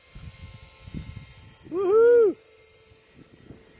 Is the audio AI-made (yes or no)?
no